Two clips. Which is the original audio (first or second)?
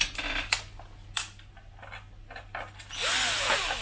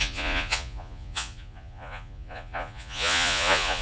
first